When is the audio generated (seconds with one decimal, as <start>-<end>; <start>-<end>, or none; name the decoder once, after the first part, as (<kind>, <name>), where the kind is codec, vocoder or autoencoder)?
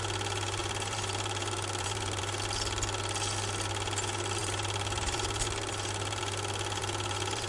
0.6-2.2 (vocoder, BigVGAN v2); 4.4-6.2; 6.8-7.5